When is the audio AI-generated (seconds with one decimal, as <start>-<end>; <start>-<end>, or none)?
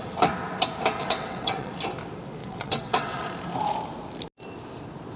1.0-1.7; 2.4-3.3